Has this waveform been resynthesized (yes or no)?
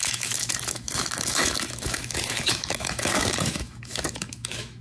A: yes